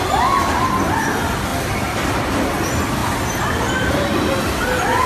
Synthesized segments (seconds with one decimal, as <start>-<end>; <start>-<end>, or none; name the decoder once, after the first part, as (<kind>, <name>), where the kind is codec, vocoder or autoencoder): none